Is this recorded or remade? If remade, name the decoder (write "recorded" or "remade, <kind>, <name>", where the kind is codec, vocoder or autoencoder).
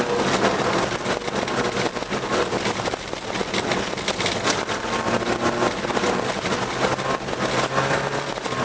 recorded